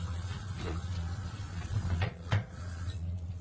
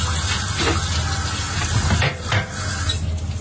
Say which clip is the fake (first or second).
first